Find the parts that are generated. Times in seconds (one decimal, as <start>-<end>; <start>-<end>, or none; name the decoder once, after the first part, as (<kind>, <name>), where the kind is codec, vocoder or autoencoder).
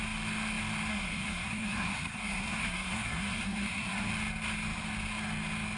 0.9-4.1 (codec, SNAC)